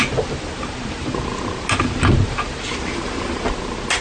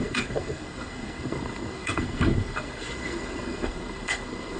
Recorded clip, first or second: first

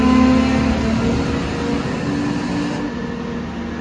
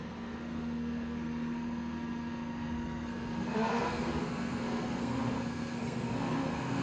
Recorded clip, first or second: first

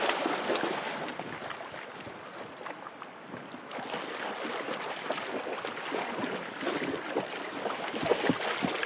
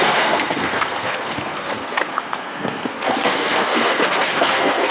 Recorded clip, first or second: first